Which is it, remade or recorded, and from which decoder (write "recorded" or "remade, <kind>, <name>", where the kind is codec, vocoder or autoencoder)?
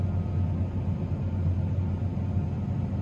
recorded